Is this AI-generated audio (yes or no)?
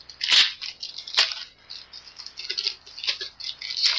no